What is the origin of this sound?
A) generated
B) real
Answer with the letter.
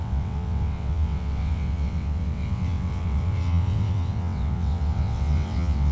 A